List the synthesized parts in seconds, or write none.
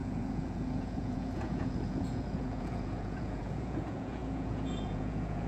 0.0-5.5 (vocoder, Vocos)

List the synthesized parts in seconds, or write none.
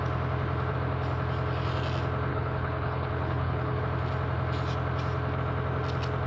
2.3-3.8 (codec, HILCodec)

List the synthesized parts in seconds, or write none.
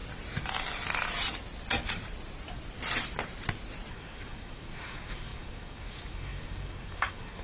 3.9-7.4 (codec, DAC)